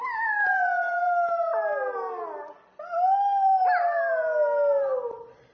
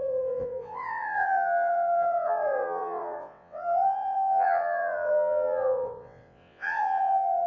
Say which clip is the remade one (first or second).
second